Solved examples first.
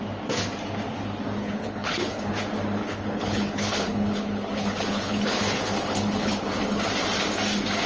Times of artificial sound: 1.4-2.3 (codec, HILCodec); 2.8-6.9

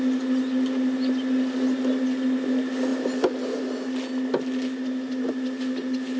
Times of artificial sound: none

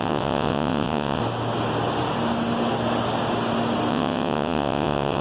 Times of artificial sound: 0.0-1.2 (vocoder, WaveNeXt); 3.9-5.2